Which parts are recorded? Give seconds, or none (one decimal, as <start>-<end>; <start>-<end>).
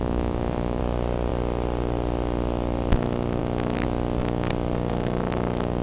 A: 0.8-5.8